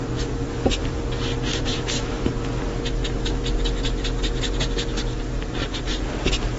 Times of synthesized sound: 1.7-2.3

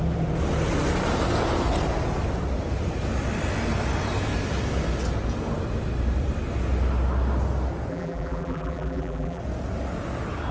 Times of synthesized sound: 7.9-9.4

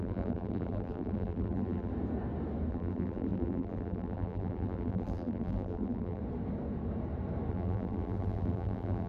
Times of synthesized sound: 0.0-1.9; 2.7-6.2; 7.5-9.1

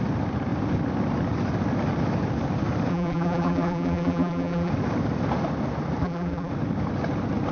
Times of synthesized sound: 2.9-4.7; 6.0-6.5

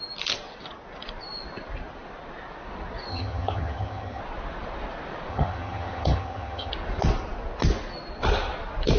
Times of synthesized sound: 3.1-4.2; 5.3-6.7

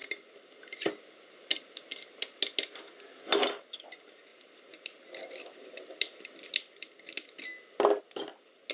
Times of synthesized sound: none

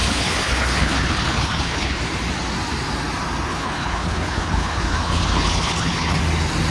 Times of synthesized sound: 0.0-2.0; 3.5-6.2

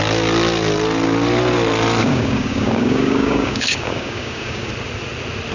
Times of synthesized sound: 2.0-4.7